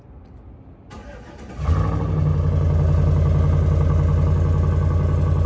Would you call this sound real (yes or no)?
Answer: yes